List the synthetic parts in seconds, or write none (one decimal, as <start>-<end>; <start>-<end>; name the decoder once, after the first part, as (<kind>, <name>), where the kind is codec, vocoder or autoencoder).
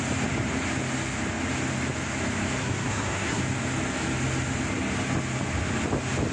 2.6-3.4 (codec, SNAC)